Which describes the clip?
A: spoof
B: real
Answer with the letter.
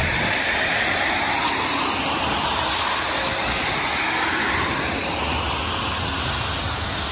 B